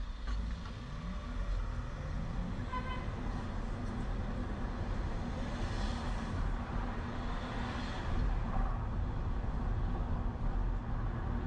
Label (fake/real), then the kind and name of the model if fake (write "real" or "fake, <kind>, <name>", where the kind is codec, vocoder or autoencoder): real